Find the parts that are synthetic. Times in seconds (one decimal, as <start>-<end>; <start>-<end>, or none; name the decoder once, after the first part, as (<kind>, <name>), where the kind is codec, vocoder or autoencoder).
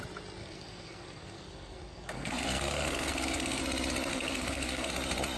0.4-3.6 (codec, SNAC); 4.1-4.9